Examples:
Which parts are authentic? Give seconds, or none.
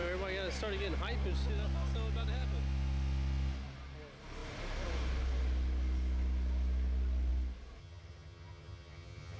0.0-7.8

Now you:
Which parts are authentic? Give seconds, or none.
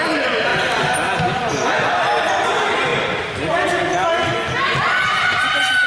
0.0-5.9